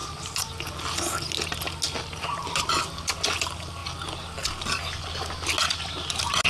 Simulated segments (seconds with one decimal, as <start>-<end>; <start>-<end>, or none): none